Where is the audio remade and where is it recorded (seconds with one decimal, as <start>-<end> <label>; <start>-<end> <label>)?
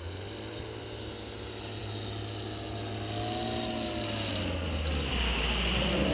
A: 0.0-6.1 recorded